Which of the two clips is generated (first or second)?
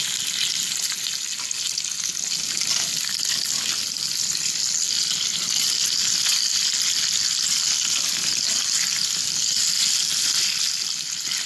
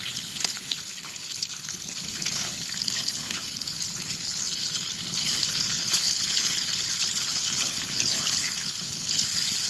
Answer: second